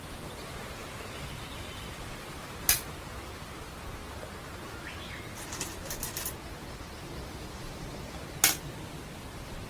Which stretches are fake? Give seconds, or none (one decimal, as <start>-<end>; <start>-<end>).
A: none